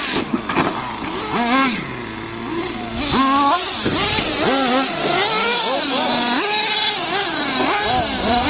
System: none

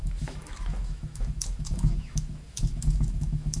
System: autoencoder, DAC-VAE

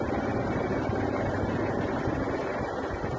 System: none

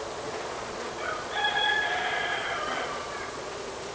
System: vocoder, Vocos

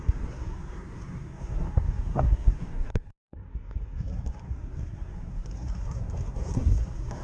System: codec, SNAC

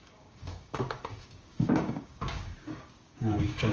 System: codec, DAC